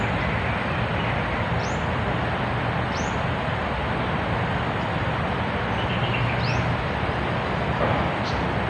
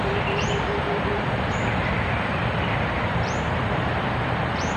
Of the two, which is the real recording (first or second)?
first